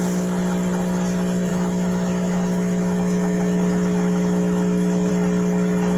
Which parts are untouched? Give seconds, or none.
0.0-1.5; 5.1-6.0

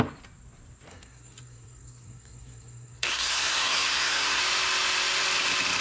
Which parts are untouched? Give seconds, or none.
0.0-0.9; 4.4-5.8

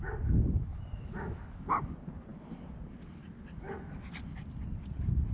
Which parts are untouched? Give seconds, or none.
0.0-0.7; 1.7-5.3